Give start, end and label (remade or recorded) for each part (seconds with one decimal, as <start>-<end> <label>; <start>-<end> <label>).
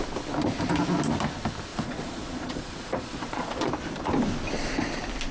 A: 0.0-1.7 recorded; 1.7-3.7 remade; 3.7-5.3 recorded